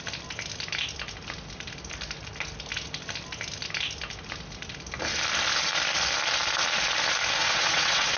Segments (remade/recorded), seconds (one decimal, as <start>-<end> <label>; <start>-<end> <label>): 0.0-7.4 recorded; 7.4-8.2 remade